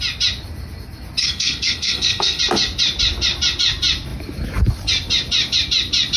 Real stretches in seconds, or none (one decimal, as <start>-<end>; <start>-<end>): 0.0-1.2; 2.4-6.2